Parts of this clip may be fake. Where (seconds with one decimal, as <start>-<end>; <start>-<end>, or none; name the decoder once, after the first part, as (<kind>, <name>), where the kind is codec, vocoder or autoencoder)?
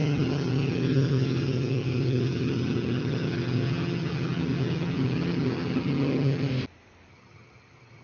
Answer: 0.0-6.5 (vocoder, HiFi-GAN); 7.1-8.0